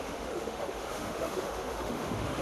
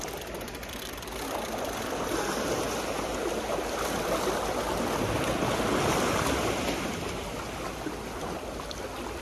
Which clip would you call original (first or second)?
second